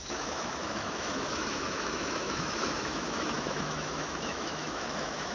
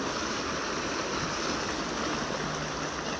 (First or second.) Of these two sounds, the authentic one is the second